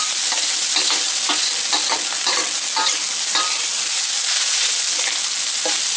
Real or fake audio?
real